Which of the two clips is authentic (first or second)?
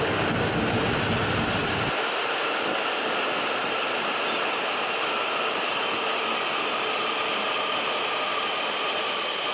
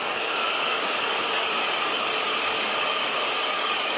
first